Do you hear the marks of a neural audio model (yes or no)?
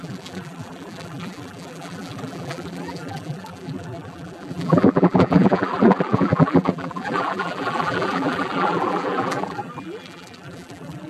yes